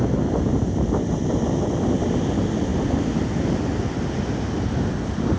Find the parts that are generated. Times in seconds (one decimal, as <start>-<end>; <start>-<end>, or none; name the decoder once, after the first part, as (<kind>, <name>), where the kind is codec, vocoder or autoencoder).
none